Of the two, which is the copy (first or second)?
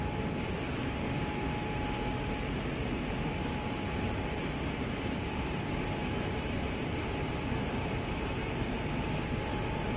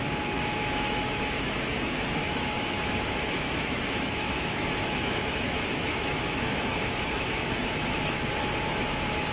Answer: second